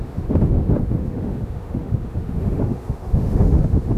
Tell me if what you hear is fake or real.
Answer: fake